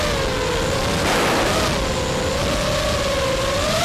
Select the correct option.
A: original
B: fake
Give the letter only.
A